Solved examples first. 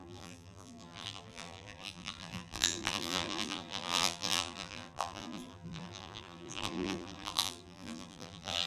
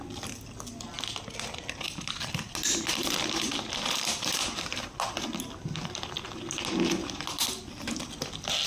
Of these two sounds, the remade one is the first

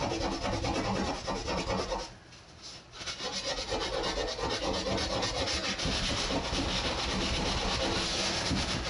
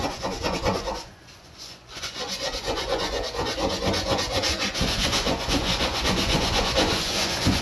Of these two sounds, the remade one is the second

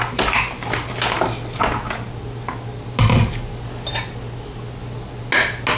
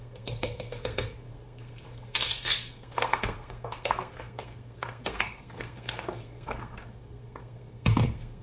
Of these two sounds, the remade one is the second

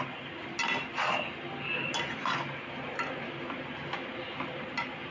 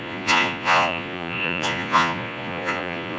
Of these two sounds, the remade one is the second